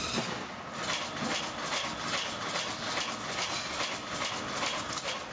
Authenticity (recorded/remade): recorded